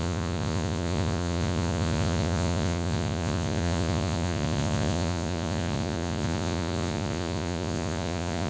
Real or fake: fake